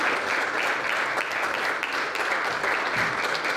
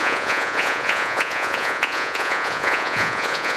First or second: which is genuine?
first